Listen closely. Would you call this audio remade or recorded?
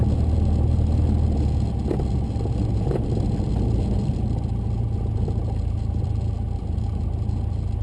recorded